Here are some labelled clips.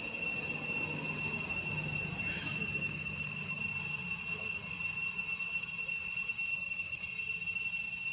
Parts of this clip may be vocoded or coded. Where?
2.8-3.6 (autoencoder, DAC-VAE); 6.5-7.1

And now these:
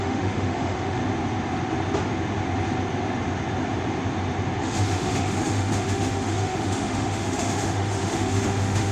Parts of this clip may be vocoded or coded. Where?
0.0-1.0 (autoencoder, DAC-VAE); 4.6-8.9

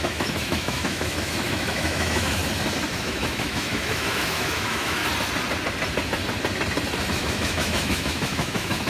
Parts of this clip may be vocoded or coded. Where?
0.0-2.4 (autoencoder, DAC-VAE); 3.0-5.0; 7.1-8.9

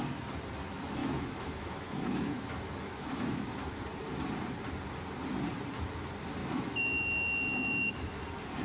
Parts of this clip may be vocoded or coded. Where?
1.0-3.8 (autoencoder, DAC-VAE); 6.4-8.2

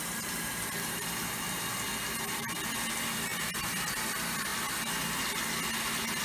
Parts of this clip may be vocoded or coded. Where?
none

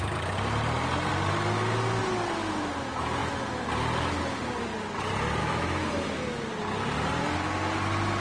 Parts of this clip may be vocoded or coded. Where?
5.4-5.9 (autoencoder, DAC-VAE)

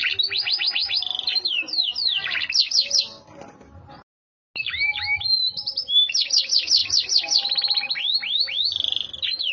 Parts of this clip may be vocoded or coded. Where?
none